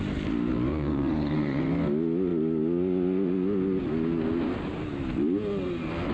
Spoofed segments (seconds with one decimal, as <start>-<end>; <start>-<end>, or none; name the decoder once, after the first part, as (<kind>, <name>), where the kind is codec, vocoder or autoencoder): 0.7-1.6 (vocoder, Vocos)